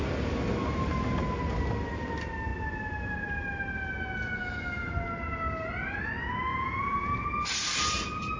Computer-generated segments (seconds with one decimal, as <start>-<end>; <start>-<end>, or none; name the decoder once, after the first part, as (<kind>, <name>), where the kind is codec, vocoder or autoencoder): 6.5-7.1 (vocoder, Vocos)